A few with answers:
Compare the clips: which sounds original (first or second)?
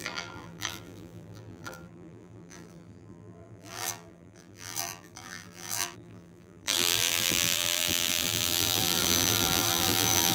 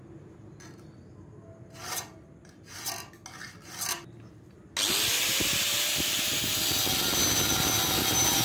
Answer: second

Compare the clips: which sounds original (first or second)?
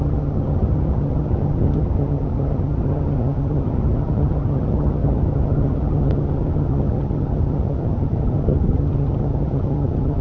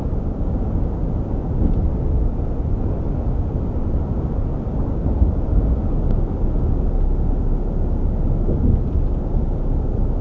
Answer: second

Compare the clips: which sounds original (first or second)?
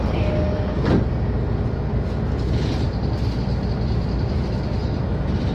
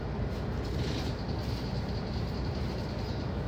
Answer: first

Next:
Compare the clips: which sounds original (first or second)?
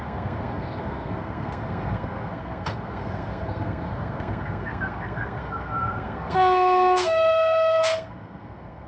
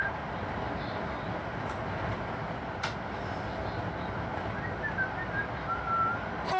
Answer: second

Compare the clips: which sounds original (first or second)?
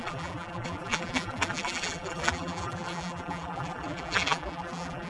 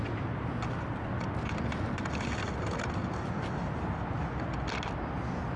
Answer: second